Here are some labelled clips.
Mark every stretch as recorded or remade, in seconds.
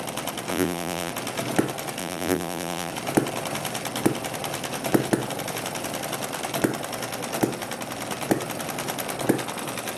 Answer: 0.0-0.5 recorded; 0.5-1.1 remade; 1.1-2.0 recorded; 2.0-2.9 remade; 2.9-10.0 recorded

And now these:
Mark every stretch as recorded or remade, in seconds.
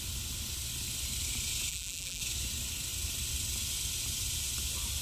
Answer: 0.0-1.7 recorded; 1.7-2.2 remade; 2.2-5.0 recorded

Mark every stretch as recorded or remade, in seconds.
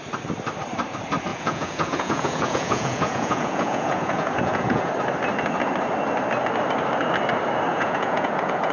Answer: 0.0-1.3 recorded; 1.3-4.9 remade; 4.9-7.7 recorded; 7.7-8.7 remade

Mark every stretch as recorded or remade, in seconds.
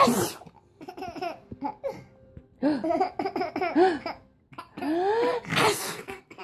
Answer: 0.0-5.7 recorded; 5.7-6.4 remade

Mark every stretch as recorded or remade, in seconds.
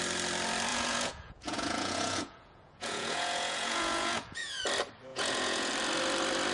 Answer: 0.0-0.7 recorded; 0.7-4.6 remade; 4.6-5.1 recorded; 5.1-5.7 remade; 5.7-6.5 recorded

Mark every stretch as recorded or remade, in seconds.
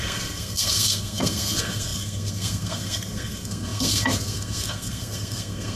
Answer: 0.0-5.8 remade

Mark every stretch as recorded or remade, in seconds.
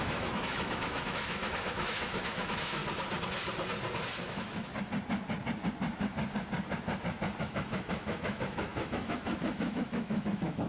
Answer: 0.0-2.8 remade; 2.8-4.2 recorded; 4.2-4.7 remade; 4.7-7.4 recorded; 7.4-10.7 remade